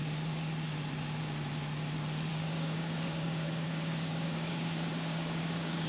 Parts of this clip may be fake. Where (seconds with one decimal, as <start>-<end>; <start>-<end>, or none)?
2.3-5.9